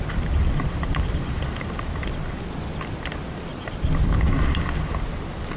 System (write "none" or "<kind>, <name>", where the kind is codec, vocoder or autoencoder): none